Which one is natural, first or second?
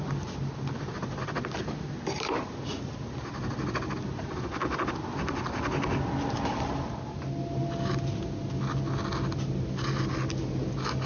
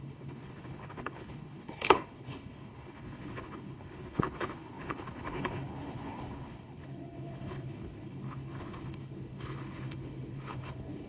first